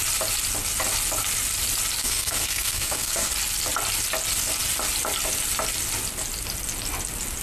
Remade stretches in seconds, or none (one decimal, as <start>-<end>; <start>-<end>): 2.0-3.3